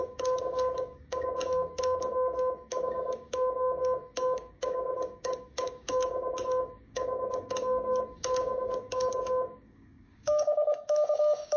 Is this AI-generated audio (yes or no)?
yes